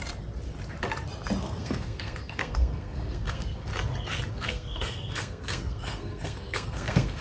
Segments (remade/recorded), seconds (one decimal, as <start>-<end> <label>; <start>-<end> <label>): 0.0-1.4 recorded; 1.4-3.7 remade; 3.7-4.3 recorded; 4.3-7.2 remade